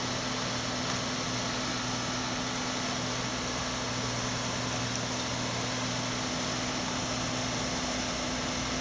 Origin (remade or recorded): recorded